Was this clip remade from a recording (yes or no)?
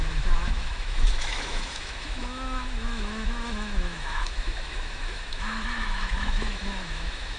yes